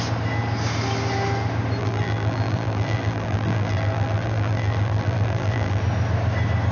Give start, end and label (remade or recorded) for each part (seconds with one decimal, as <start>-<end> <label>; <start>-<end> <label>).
0.0-1.8 recorded; 1.8-5.8 remade; 5.8-6.7 recorded

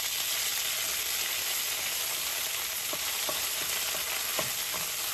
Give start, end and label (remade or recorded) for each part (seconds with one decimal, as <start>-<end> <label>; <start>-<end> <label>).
0.0-5.1 recorded

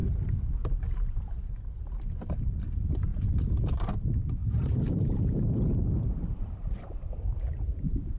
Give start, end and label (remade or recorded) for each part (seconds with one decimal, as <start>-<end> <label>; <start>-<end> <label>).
0.0-2.6 recorded; 2.6-8.2 remade

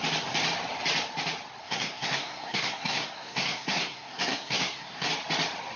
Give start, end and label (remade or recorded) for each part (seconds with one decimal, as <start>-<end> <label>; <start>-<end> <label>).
0.0-1.6 recorded; 1.6-5.1 remade; 5.1-5.8 recorded

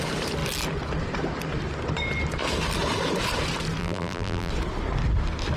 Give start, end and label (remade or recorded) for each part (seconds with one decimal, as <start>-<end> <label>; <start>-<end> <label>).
0.0-3.8 recorded; 3.8-4.5 remade; 4.5-5.6 recorded

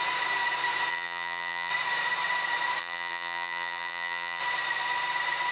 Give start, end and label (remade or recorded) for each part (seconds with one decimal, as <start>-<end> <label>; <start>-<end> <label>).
0.0-0.9 recorded; 0.9-1.7 remade; 1.7-2.8 recorded; 2.8-4.4 remade; 4.4-5.5 recorded

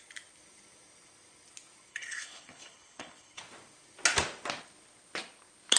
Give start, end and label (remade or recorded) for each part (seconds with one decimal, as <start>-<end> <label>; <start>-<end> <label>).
0.0-1.9 recorded; 1.9-3.4 remade; 3.4-5.8 recorded

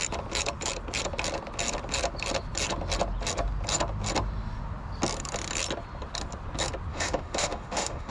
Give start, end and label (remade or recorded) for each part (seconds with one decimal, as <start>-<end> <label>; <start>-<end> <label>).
0.0-6.9 recorded; 6.9-8.1 remade